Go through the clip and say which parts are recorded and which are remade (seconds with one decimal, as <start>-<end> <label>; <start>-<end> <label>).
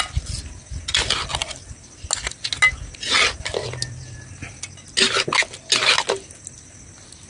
0.0-7.3 recorded